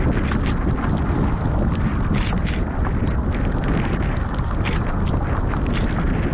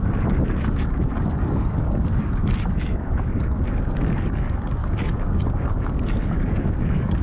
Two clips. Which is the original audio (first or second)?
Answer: first